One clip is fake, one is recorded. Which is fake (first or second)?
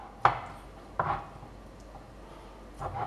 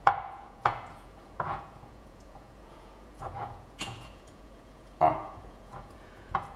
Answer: second